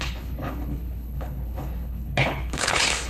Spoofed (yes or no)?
yes